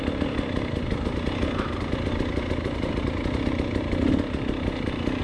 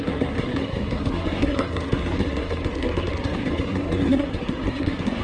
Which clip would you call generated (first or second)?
second